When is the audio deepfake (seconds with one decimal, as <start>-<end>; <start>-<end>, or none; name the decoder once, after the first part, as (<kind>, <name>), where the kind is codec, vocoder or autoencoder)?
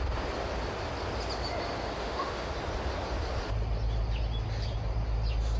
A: 2.0-2.5 (autoencoder, DAC-VAE)